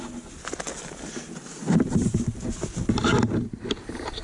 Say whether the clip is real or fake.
real